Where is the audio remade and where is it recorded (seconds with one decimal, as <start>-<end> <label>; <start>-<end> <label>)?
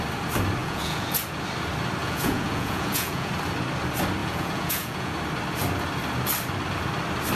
0.0-0.6 recorded; 0.6-1.2 remade; 1.2-2.0 recorded; 2.0-3.3 remade; 3.3-4.2 recorded; 4.2-5.1 remade; 5.1-7.4 recorded